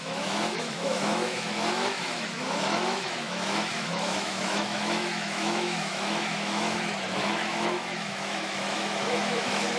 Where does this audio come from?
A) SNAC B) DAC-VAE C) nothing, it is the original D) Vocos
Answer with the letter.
B